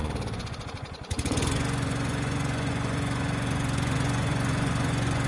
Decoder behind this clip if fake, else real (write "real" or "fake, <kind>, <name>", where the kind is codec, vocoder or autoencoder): fake, vocoder, Vocos